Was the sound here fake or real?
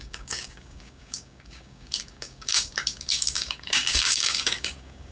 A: fake